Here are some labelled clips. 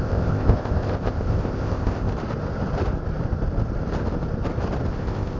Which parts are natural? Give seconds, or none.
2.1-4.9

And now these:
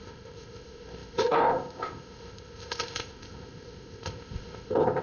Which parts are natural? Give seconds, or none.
none

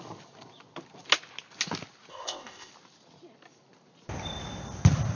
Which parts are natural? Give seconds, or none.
0.0-2.1; 2.7-5.2

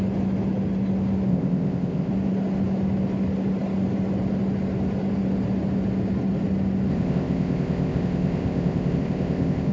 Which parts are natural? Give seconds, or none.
0.0-1.3; 2.1-6.9